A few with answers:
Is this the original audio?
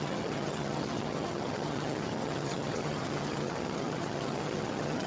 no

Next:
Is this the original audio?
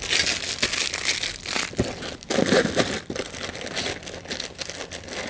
yes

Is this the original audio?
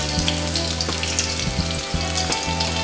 yes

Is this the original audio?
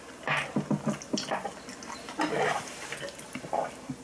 yes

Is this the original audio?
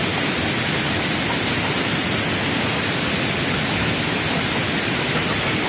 yes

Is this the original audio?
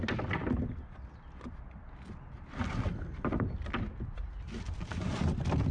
yes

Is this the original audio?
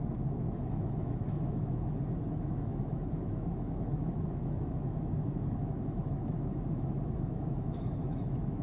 no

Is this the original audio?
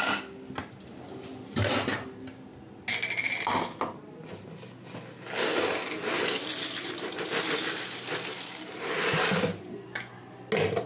yes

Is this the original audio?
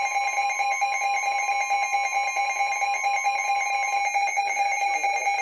yes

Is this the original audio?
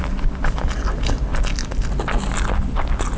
yes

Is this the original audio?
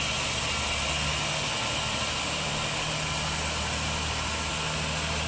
yes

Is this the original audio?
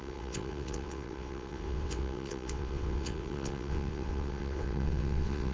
no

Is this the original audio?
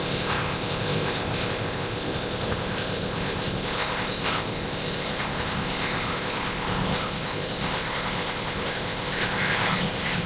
no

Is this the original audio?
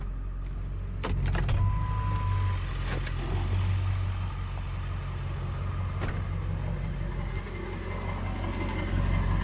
yes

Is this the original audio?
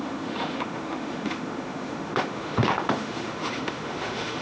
no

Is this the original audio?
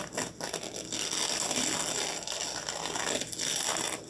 yes